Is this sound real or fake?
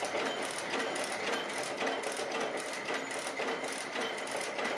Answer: real